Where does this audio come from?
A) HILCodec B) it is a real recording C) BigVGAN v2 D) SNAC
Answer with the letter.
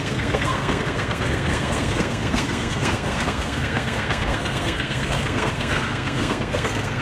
D